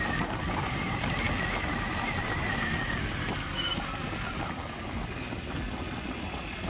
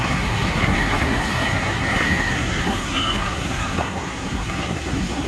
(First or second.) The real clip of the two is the first